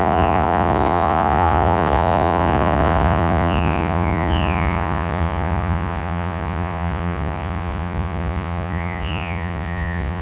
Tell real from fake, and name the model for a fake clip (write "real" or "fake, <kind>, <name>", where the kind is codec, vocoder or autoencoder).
fake, vocoder, Vocos